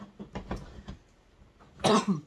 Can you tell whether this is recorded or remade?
recorded